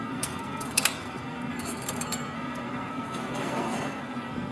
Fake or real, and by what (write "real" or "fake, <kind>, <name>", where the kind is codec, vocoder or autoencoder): fake, codec, SNAC